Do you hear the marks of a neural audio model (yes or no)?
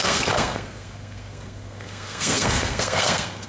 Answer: yes